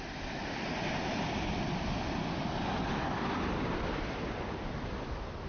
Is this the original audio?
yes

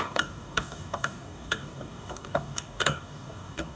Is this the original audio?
no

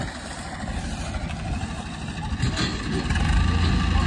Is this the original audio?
yes